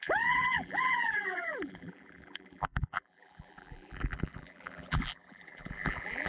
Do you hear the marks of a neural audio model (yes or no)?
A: yes